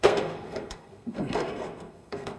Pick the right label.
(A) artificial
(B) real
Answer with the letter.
A